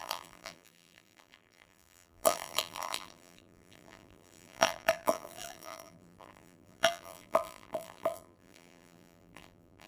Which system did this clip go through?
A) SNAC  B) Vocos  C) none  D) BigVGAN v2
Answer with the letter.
D